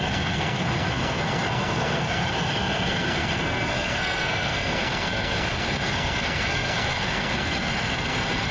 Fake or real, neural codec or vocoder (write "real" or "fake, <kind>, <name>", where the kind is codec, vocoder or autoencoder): fake, codec, SNAC